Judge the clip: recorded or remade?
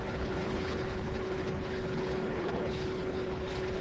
remade